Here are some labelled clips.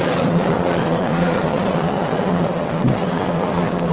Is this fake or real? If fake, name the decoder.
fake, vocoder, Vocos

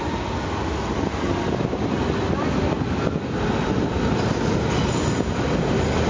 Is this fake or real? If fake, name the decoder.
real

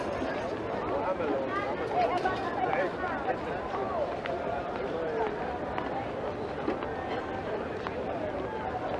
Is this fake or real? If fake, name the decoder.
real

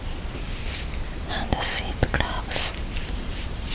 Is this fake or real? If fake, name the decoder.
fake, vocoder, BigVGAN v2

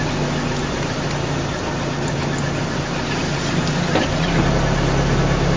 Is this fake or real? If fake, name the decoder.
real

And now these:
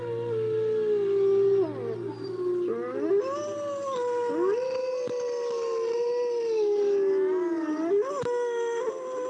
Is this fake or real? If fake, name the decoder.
real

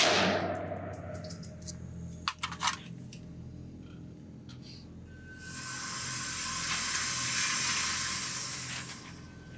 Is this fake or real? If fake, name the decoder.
real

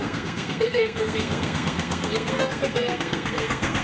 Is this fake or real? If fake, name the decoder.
fake, codec, SNAC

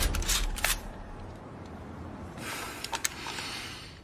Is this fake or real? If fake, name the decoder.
fake, vocoder, BigVGAN v2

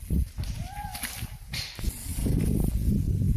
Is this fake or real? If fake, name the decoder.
real